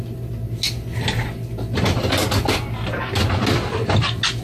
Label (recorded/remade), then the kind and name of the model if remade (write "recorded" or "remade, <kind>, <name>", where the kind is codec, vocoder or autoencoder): recorded